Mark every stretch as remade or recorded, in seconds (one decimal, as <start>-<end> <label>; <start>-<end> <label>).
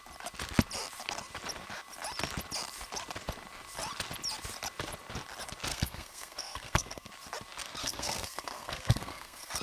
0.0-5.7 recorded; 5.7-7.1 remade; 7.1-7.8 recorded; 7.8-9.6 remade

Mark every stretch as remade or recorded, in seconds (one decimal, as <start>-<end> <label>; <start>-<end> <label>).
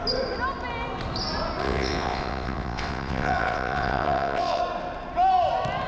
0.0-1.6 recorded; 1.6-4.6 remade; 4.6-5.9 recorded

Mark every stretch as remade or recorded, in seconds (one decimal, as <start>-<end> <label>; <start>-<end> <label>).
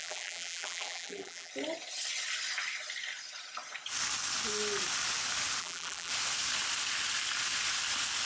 0.0-1.5 remade; 1.5-5.6 recorded; 5.6-6.1 remade; 6.1-8.3 recorded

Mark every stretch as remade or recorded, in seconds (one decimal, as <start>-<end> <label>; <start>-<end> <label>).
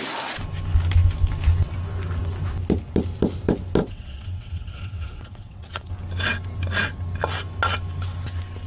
0.0-3.8 recorded; 3.8-5.9 remade; 5.9-8.7 recorded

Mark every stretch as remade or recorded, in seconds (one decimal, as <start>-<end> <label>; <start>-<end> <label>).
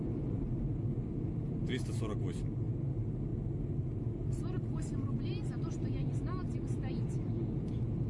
0.0-4.2 recorded; 4.2-5.2 remade; 5.2-8.1 recorded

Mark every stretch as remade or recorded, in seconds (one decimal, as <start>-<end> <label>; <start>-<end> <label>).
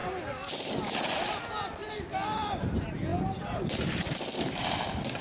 0.0-1.8 remade; 1.8-2.7 recorded; 2.7-5.2 remade